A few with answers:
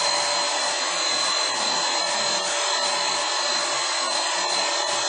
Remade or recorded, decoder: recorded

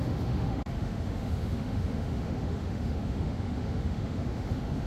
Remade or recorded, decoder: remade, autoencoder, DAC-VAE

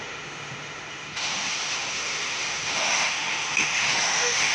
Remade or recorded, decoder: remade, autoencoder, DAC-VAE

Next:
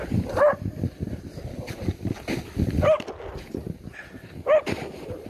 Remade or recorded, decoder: recorded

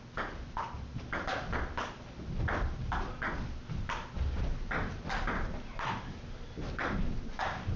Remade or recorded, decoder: recorded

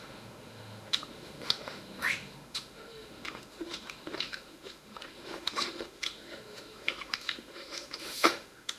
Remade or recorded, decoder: remade, autoencoder, DAC-VAE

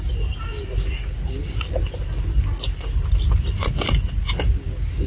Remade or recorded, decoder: recorded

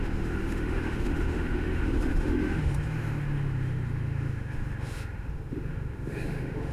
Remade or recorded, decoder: remade, autoencoder, DAC-VAE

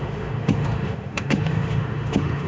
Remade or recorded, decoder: remade, autoencoder, DAC-VAE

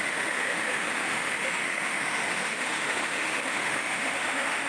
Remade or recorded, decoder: remade, autoencoder, DAC-VAE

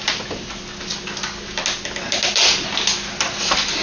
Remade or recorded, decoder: recorded